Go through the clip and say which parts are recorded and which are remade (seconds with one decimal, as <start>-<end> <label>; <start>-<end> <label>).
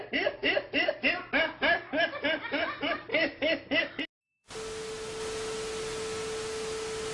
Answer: 0.0-7.1 recorded